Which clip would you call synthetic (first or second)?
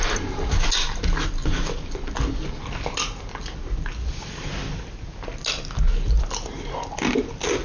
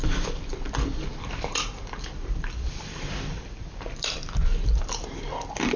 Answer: second